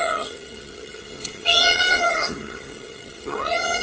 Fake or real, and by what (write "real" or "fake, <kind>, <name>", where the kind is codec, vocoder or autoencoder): fake, vocoder, HiFi-GAN